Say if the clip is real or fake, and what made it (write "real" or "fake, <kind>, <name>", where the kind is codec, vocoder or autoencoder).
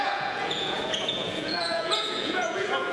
fake, vocoder, Vocos